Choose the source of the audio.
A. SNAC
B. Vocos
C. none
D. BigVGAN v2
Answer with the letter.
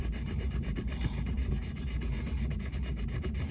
D